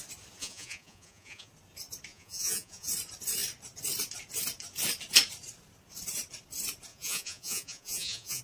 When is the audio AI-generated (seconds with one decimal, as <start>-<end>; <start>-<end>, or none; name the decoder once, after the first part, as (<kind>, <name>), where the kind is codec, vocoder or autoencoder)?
0.4-1.5 (vocoder, Vocos); 2.1-2.9; 6.9-8.4